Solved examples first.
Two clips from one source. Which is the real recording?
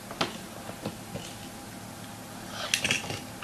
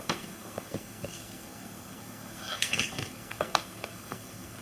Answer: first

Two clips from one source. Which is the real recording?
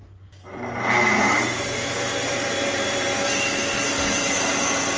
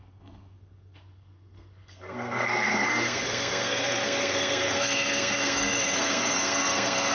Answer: first